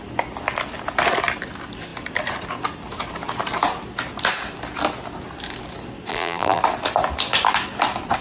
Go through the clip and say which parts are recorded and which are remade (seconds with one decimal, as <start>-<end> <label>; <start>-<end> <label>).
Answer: 0.0-6.1 recorded; 6.1-6.6 remade; 6.6-8.2 recorded